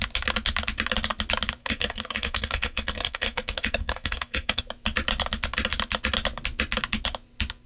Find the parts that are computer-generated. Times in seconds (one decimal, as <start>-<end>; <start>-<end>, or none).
1.6-4.6